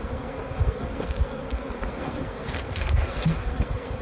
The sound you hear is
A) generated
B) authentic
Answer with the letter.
A